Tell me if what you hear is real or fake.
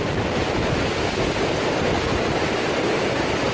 real